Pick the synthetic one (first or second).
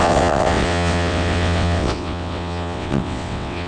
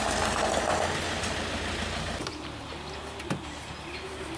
first